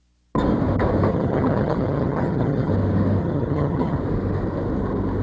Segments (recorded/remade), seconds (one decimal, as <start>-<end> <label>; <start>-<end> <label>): 0.0-1.1 recorded; 1.1-2.7 remade; 2.7-3.2 recorded; 3.2-4.0 remade; 4.0-5.2 recorded